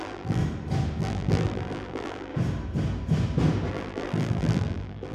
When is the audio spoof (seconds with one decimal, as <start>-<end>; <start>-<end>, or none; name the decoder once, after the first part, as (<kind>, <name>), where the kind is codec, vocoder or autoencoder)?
0.0-0.4 (vocoder, BigVGAN v2); 1.0-2.3; 3.7-5.1